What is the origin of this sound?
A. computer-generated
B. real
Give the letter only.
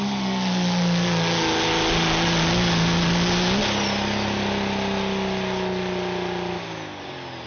B